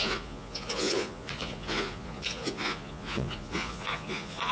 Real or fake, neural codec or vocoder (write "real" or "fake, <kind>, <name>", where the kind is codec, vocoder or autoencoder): fake, vocoder, Vocos